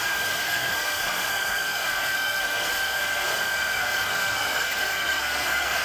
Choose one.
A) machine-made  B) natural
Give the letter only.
A